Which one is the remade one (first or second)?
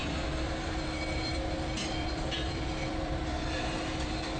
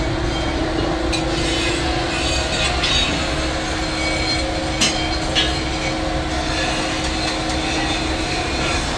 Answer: first